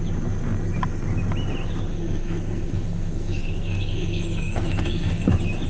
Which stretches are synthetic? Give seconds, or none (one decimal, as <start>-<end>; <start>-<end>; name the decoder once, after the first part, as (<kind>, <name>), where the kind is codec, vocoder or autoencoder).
1.9-5.3 (codec, SNAC)